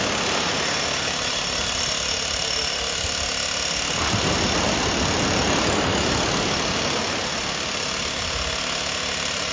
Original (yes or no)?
yes